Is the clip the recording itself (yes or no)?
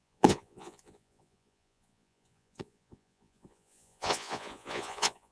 no